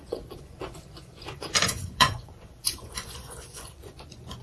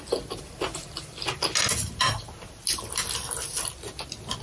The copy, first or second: first